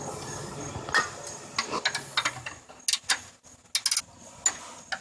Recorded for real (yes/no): yes